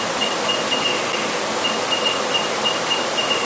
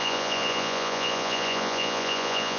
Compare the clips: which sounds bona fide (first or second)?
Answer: first